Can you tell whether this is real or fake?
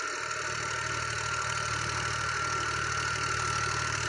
fake